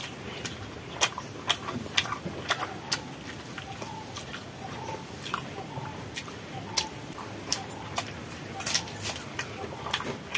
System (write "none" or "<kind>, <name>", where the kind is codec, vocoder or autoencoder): none